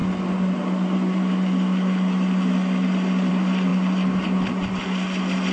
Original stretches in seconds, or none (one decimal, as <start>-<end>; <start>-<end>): 0.0-5.5